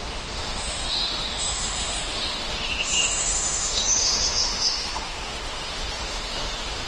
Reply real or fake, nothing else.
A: fake